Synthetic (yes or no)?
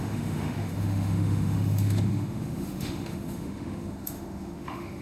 yes